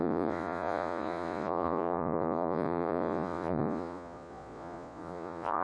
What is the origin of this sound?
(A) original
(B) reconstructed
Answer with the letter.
B